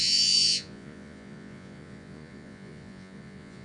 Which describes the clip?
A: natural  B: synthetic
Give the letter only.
B